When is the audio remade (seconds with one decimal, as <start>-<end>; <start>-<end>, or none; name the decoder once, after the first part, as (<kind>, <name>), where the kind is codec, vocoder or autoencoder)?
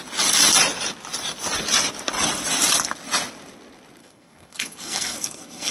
4.0-5.7 (codec, SNAC)